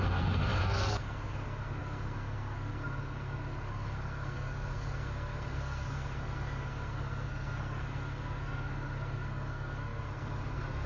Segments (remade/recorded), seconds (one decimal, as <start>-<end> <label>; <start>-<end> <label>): 0.0-10.9 remade